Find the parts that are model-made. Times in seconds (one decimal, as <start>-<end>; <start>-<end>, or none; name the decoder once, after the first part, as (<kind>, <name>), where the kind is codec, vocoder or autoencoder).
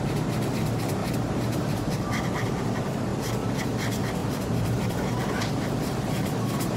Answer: 1.0-2.6 (vocoder, BigVGAN v2); 4.2-6.8